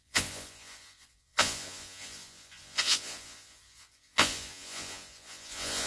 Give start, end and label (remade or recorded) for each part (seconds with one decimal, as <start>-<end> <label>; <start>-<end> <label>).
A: 0.0-5.9 remade